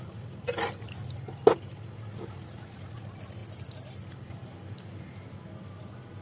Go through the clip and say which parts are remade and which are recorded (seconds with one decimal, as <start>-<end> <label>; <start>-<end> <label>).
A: 0.0-6.2 recorded